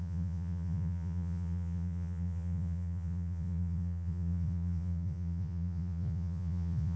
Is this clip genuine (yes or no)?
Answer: no